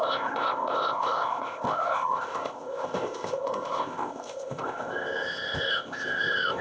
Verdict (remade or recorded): remade